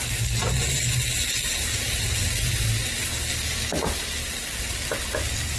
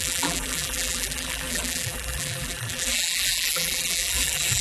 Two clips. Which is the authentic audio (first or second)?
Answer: first